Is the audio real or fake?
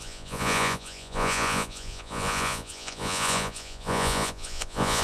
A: fake